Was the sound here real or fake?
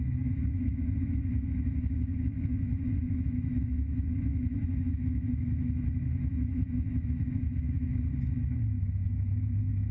fake